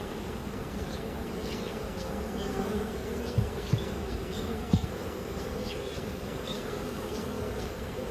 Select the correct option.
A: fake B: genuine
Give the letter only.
A